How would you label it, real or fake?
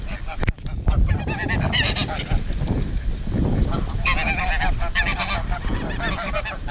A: real